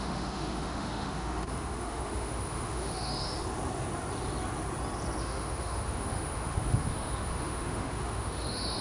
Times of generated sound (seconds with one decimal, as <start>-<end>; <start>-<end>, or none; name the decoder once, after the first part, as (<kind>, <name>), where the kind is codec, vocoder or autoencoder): 0.0-3.1 (autoencoder, DAC-VAE); 5.2-8.8